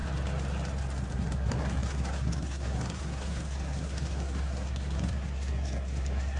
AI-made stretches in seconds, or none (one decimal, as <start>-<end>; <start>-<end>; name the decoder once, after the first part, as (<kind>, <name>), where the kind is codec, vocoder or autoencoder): 1.1-6.4 (codec, SNAC)